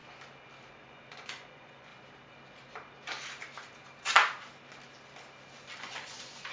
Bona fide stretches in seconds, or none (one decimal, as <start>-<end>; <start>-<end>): 0.0-0.8; 1.9-5.8

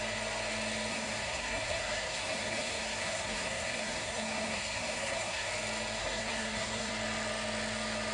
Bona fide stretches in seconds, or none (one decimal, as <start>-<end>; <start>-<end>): 0.0-0.9; 5.5-6.0; 6.9-8.1

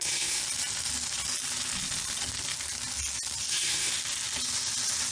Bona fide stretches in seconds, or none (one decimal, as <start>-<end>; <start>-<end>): 0.4-3.5; 3.9-5.1

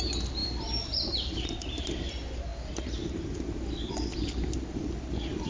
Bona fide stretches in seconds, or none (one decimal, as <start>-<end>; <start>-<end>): 0.0-0.4; 2.1-5.5

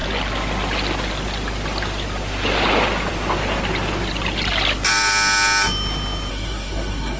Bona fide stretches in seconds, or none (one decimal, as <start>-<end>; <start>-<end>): 0.0-6.3

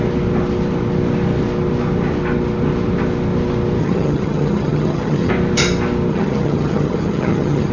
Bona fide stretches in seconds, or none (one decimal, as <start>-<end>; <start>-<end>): 0.0-3.8; 5.3-6.1